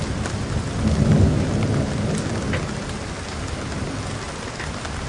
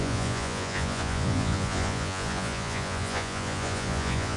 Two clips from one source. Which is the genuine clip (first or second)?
first